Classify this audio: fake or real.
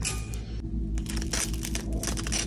real